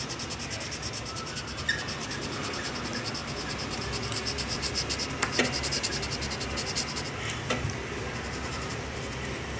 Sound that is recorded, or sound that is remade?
recorded